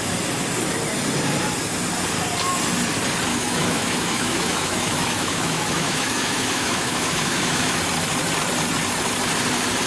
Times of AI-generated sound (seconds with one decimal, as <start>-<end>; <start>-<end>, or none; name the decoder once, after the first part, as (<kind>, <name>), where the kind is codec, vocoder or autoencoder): 3.3-7.8 (autoencoder, DAC-VAE)